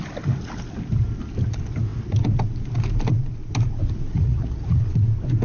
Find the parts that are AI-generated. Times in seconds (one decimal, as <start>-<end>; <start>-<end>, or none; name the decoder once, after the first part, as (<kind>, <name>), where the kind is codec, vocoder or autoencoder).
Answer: 4.1-4.8 (vocoder, Vocos)